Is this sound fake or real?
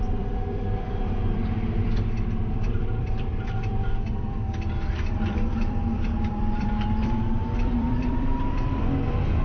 fake